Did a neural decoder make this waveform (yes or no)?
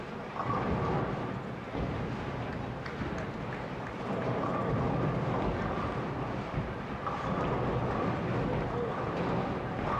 no